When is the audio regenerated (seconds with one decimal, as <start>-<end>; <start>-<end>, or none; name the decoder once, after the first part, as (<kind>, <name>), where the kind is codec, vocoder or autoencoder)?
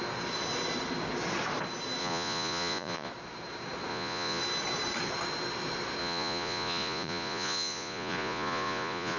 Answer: 2.0-3.1 (vocoder, Vocos); 3.9-4.4; 6.0-9.2